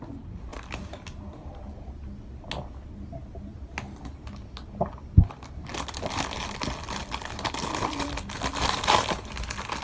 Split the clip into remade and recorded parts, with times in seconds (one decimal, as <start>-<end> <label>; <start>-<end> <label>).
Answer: 0.0-0.5 recorded; 0.5-1.7 remade; 1.7-5.7 recorded; 5.7-9.8 remade